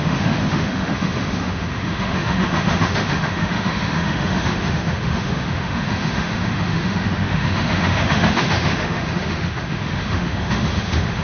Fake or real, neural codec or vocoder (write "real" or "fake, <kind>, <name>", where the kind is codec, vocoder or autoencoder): fake, autoencoder, DAC-VAE